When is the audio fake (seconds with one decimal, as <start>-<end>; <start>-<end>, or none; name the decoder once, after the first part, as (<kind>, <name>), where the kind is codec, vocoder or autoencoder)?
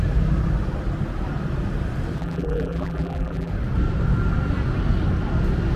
2.2-3.5 (vocoder, BigVGAN v2)